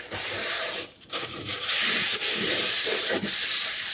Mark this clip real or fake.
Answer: fake